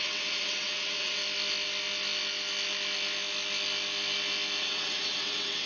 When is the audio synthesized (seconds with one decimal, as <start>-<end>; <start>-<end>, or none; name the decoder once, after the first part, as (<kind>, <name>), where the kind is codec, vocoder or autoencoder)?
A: 0.0-1.2 (vocoder, WaveNeXt); 4.6-5.7